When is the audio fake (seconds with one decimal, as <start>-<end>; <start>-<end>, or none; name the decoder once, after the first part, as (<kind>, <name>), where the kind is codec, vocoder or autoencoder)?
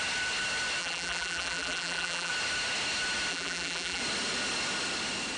0.8-2.3 (vocoder, BigVGAN v2); 3.3-4.0